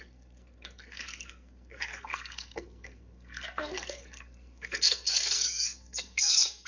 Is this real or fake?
fake